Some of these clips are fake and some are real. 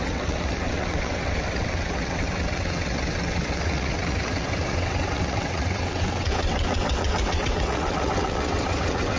fake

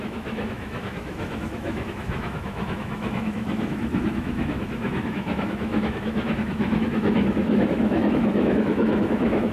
fake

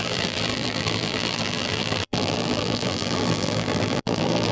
fake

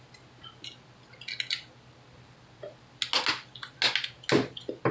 real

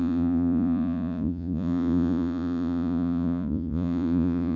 fake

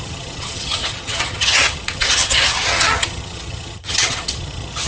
fake